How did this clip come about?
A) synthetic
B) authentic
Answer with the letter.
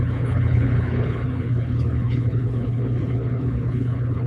A